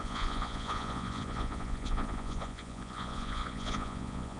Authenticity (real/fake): fake